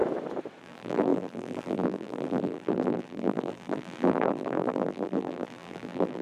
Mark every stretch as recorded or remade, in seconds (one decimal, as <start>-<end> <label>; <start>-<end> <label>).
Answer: 0.0-0.6 recorded; 0.6-6.2 remade